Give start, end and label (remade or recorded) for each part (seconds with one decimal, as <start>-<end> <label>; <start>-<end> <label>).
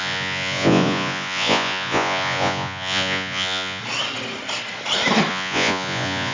0.0-3.8 remade; 3.8-5.3 recorded; 5.3-6.3 remade